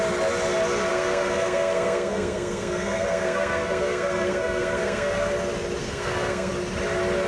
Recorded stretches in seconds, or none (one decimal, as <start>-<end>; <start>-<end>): 0.0-0.9; 5.3-5.8; 6.5-7.3